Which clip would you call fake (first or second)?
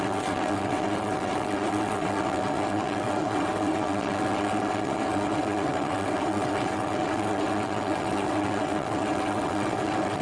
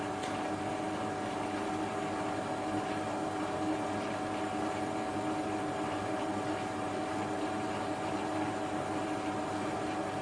first